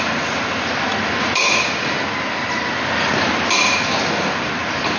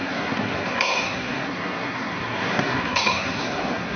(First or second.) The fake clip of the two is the second